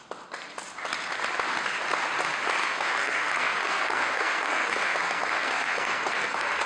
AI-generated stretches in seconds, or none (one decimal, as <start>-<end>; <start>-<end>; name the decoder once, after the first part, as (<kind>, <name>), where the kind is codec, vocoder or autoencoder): 2.6-6.7 (codec, SNAC)